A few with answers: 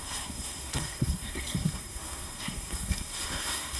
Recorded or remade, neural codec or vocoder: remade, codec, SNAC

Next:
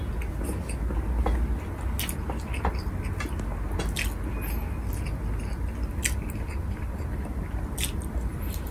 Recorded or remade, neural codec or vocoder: recorded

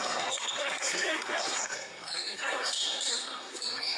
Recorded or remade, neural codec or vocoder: remade, codec, SNAC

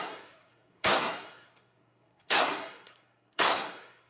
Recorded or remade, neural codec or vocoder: remade, codec, SNAC